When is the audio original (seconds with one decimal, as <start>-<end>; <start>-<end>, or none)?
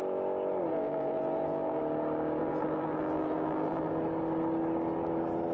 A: 0.0-0.7; 1.8-2.4; 3.9-5.5